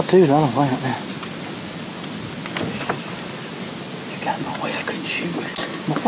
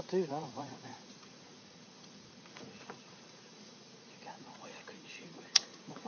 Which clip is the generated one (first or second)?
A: second